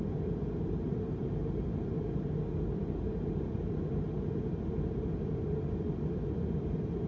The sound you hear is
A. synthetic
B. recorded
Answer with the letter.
B